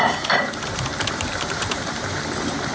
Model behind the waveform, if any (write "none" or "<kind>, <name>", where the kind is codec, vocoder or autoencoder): vocoder, BigVGAN v2